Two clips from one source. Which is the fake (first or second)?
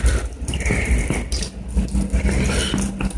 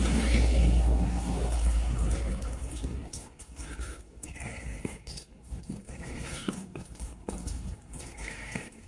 second